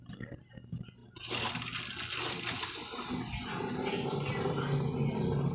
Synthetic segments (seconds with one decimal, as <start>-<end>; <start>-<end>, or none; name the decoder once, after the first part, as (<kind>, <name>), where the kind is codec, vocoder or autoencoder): none